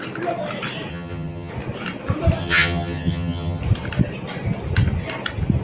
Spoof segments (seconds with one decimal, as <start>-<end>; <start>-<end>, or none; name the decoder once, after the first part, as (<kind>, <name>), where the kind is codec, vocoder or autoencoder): 0.9-1.5 (vocoder, HiFi-GAN); 2.4-3.6